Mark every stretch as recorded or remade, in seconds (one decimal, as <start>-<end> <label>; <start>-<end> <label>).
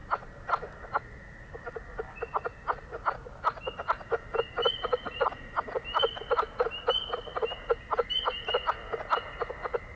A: 0.0-4.6 recorded; 4.6-5.6 remade; 5.6-10.0 recorded